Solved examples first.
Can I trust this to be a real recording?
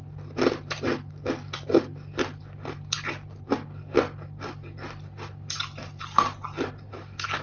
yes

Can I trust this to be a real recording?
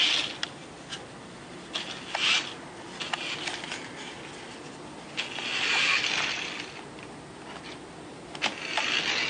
yes